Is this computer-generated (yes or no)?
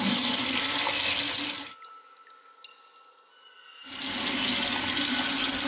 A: no